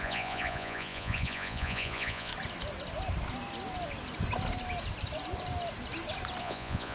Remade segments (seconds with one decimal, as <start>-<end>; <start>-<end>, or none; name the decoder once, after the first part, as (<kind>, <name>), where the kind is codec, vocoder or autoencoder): 0.0-2.3 (vocoder, Vocos); 6.4-6.9